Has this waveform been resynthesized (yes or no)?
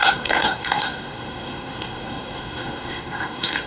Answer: yes